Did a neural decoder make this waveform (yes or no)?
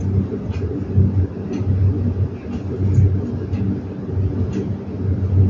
no